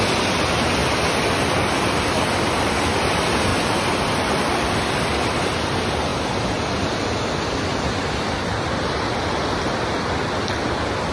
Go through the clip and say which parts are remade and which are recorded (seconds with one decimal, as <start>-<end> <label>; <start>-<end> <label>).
0.0-0.8 recorded; 0.8-2.8 remade; 2.8-3.5 recorded; 3.5-4.9 remade; 4.9-6.1 recorded; 6.1-7.6 remade; 7.6-11.1 recorded